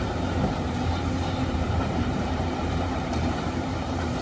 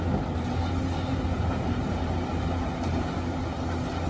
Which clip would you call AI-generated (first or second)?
first